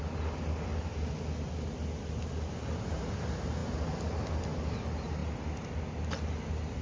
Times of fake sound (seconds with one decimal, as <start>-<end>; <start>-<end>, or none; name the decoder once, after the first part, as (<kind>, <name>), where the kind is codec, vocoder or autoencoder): none